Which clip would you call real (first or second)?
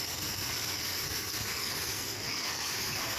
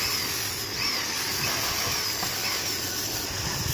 second